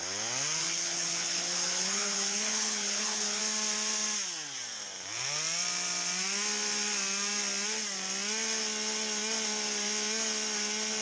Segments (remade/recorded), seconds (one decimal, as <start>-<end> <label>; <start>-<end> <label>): 0.0-0.6 recorded; 0.6-3.4 remade; 3.4-11.0 recorded